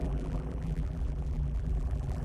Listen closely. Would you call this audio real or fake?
fake